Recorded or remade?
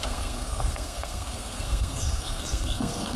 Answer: remade